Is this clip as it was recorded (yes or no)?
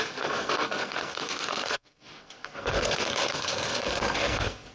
no